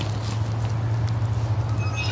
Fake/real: real